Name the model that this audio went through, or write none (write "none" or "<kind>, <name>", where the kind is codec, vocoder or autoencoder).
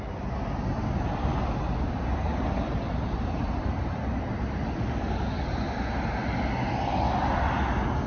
none